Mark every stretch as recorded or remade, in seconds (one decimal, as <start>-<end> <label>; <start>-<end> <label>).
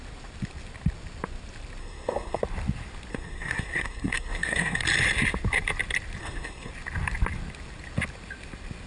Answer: 0.0-1.8 recorded; 1.8-2.4 remade; 2.4-3.1 recorded; 3.1-4.8 remade; 4.8-6.2 recorded; 6.2-6.7 remade; 6.7-8.9 recorded